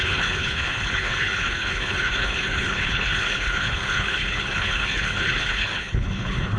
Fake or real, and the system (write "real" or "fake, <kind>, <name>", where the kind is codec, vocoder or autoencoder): fake, codec, HILCodec